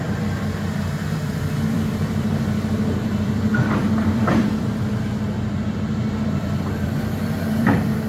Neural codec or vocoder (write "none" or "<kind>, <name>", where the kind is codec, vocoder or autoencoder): vocoder, BigVGAN v2